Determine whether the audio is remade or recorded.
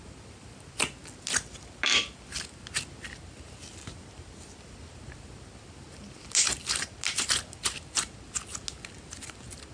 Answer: recorded